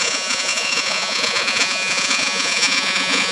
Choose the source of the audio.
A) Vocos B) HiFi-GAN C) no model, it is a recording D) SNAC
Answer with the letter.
A